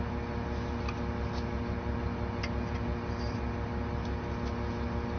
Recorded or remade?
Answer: recorded